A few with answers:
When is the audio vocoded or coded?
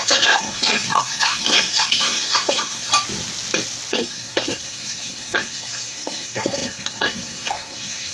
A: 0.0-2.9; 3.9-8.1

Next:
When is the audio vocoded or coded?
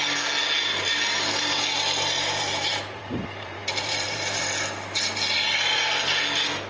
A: 0.7-4.4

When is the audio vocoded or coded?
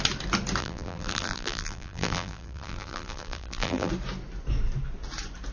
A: 0.6-3.9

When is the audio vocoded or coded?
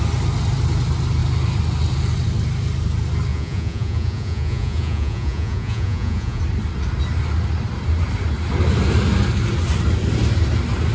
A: 3.3-6.4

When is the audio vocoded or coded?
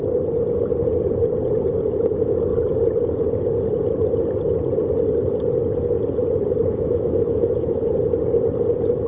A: 6.6-7.8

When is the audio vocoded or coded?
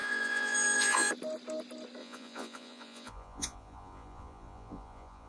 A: 0.0-1.1; 2.0-5.3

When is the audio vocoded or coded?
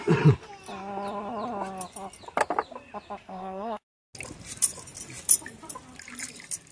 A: 3.2-3.8